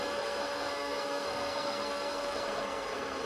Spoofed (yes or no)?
yes